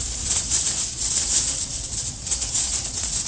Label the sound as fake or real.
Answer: fake